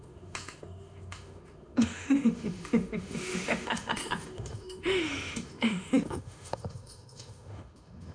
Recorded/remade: remade